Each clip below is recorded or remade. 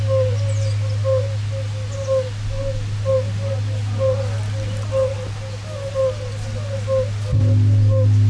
recorded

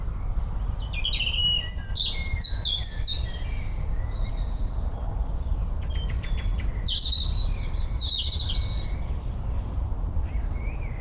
recorded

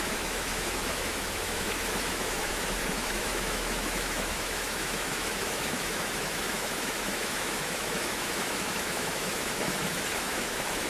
remade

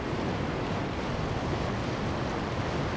recorded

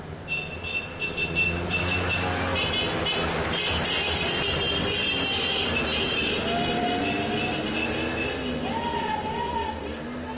recorded